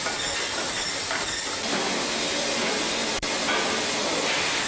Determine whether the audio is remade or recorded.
recorded